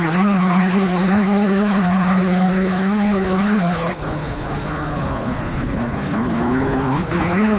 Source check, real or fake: fake